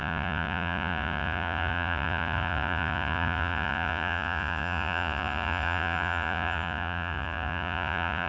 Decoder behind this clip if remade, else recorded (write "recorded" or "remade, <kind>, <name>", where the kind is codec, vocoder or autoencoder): remade, vocoder, Vocos